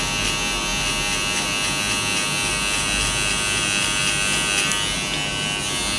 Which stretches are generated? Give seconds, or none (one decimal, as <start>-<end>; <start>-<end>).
none